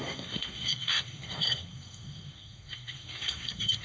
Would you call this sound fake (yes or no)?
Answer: yes